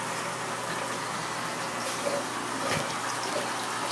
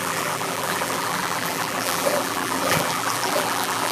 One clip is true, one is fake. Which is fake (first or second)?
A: second